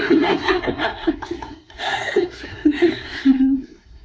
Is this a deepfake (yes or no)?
yes